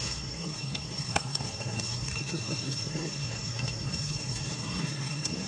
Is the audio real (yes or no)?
no